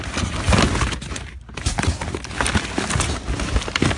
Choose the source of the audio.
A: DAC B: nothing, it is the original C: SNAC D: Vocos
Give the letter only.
B